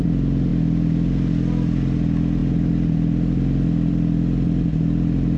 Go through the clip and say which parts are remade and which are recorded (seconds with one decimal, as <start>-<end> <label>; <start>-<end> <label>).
0.0-5.4 recorded